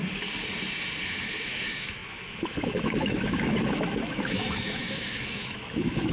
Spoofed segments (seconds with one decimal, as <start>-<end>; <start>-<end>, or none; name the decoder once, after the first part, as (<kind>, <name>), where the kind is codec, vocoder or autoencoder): 1.1-6.1 (autoencoder, DAC-VAE)